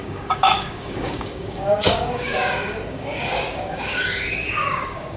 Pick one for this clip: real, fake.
fake